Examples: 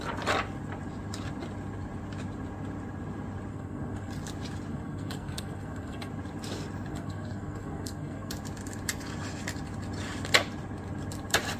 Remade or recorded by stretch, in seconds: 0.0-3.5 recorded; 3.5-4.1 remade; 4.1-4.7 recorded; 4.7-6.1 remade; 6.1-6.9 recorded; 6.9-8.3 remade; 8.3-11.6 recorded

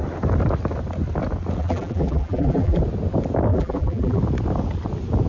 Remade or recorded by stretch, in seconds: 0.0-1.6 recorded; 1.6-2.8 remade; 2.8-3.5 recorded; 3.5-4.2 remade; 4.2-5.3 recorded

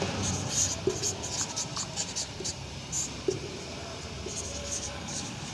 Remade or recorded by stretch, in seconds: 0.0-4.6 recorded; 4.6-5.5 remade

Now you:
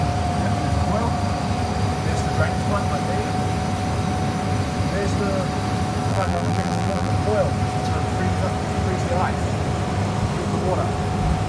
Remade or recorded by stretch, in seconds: 0.0-6.1 recorded; 6.1-7.1 remade; 7.1-11.5 recorded

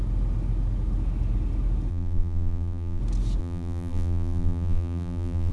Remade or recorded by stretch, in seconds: 0.0-1.9 recorded; 1.9-3.0 remade; 3.0-3.4 recorded; 3.4-5.5 remade